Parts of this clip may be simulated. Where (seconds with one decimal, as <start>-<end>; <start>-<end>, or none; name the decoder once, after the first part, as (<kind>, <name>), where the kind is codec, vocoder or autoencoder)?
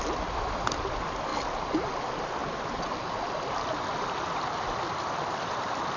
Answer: none